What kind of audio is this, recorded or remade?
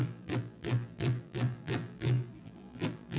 remade